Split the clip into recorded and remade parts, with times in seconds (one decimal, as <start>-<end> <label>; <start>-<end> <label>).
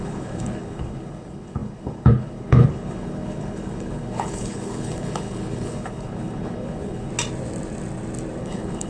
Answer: 0.0-7.1 remade; 7.1-8.4 recorded; 8.4-8.9 remade